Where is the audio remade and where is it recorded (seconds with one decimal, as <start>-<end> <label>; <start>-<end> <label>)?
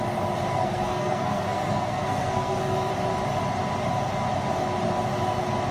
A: 0.0-0.5 recorded; 0.5-2.9 remade; 2.9-5.7 recorded